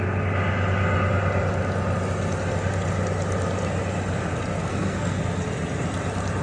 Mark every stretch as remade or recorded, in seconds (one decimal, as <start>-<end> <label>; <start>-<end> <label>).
0.0-4.7 recorded; 4.7-5.2 remade; 5.2-6.4 recorded